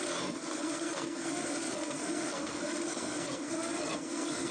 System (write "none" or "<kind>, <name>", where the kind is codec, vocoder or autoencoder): codec, SNAC